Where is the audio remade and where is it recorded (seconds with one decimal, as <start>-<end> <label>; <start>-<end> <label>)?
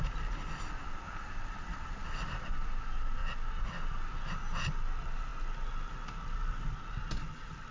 0.0-7.7 recorded